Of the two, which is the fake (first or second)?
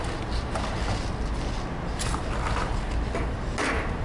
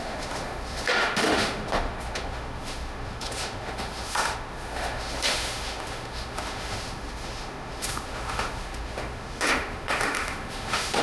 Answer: second